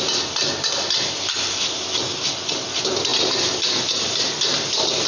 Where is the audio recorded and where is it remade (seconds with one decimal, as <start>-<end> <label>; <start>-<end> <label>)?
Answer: 0.0-5.1 recorded